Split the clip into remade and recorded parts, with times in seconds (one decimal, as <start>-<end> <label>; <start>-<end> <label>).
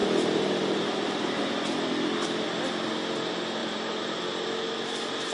0.0-1.5 remade; 1.5-3.6 recorded; 3.6-4.2 remade; 4.2-5.3 recorded